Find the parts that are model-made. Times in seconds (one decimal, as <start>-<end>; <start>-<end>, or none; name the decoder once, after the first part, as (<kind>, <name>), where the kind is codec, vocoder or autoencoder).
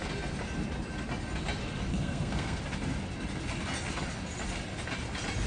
1.9-2.6 (codec, SNAC)